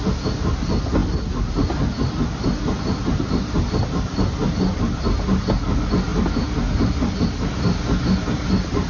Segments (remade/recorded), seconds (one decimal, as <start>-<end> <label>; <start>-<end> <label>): 0.0-8.9 recorded